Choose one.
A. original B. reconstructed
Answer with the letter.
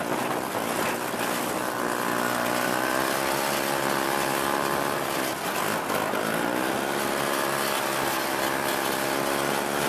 A